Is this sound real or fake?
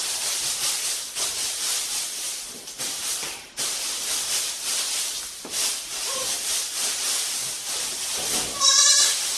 fake